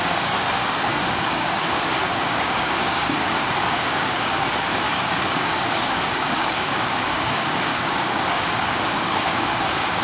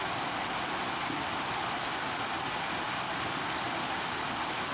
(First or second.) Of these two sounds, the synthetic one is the first